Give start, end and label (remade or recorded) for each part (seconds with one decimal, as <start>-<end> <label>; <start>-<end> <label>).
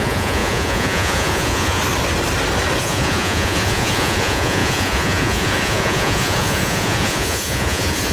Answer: 0.0-1.8 remade; 1.8-2.8 recorded; 2.8-8.1 remade